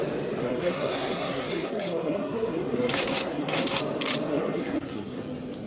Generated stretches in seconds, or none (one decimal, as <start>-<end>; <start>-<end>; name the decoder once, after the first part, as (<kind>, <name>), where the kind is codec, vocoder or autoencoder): 0.4-3.8 (codec, SNAC); 4.3-5.2